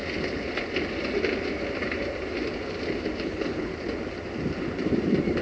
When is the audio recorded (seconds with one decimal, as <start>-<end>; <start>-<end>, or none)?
0.0-3.2; 3.7-5.4